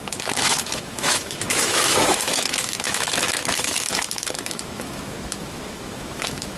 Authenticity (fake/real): fake